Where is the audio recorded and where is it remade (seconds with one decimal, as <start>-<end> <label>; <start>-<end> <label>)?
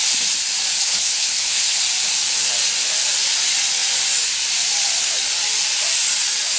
0.0-0.7 recorded; 0.7-1.8 remade; 1.8-6.6 recorded